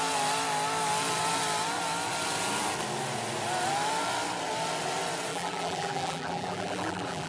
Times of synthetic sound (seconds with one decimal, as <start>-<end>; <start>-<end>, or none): 5.3-7.3